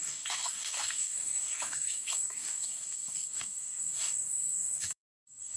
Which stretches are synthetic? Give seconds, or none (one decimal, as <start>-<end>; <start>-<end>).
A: 0.0-5.6